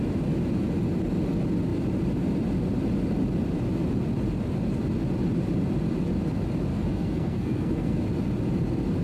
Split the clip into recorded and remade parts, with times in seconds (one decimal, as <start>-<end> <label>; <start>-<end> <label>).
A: 0.0-6.7 recorded; 6.7-8.0 remade; 8.0-9.0 recorded